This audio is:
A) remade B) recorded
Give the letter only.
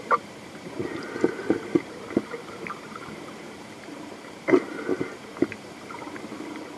A